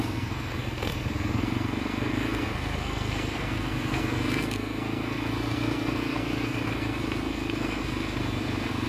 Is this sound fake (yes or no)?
yes